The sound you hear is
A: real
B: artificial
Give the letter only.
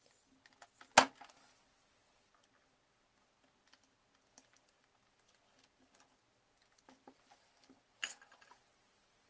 A